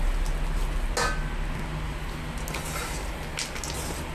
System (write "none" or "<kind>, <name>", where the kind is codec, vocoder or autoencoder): none